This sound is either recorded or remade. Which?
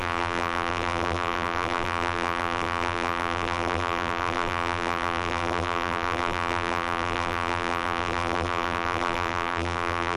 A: remade